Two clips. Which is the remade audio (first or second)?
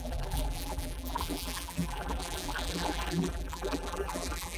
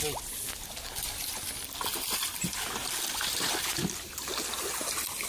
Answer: first